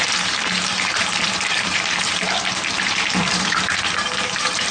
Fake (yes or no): yes